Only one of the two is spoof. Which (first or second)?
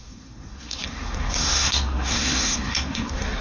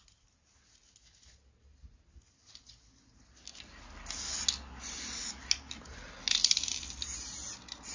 first